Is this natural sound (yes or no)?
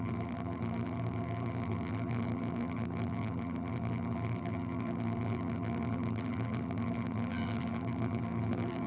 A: no